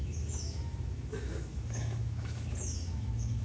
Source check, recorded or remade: remade